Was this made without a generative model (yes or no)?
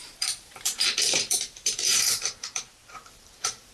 no